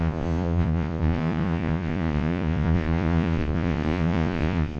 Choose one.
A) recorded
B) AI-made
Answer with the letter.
B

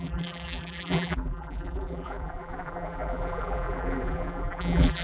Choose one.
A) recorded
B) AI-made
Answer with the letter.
B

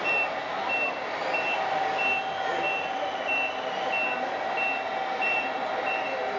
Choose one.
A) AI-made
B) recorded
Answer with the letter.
B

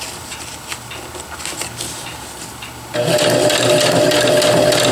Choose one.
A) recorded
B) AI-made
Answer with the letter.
A